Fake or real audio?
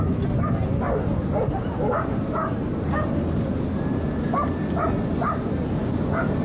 real